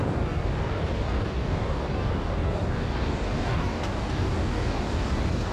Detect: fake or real fake